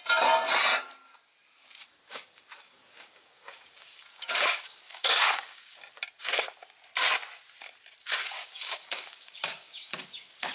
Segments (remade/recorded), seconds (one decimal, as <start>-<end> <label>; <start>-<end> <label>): 0.0-1.8 recorded; 1.8-5.8 remade; 5.8-8.0 recorded; 8.0-10.5 remade